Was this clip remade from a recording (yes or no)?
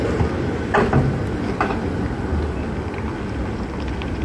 no